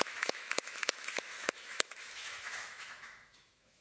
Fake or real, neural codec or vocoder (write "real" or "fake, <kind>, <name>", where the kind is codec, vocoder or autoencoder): fake, autoencoder, DAC-VAE